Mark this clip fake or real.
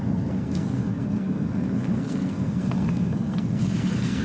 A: fake